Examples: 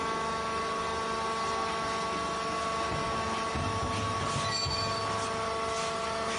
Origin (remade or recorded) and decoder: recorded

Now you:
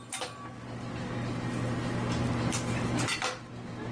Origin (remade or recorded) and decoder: recorded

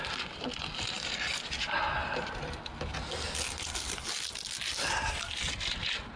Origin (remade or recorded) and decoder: recorded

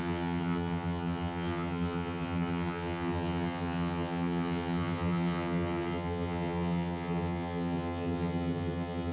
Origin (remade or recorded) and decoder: remade, vocoder, HiFi-GAN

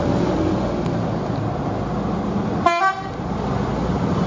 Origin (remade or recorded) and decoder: recorded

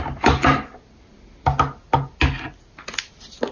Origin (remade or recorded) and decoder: recorded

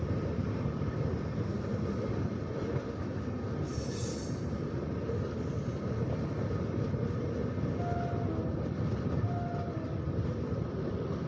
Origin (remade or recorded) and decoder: recorded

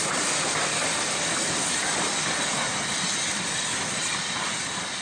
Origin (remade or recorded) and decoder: recorded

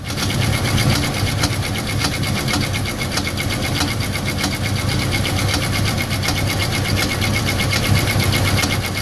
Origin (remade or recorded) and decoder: recorded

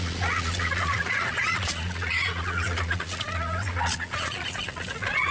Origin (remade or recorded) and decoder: remade, vocoder, Vocos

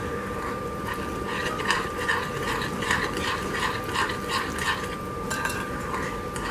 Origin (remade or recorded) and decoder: recorded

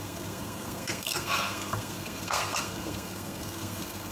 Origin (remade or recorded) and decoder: remade, codec, SNAC